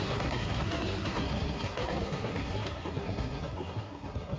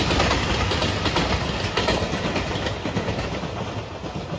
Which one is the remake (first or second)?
first